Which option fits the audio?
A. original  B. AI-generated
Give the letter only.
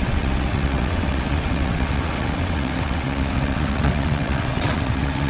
B